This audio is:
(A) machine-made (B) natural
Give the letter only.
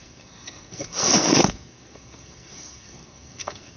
A